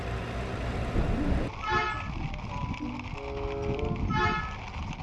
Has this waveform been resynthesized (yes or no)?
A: no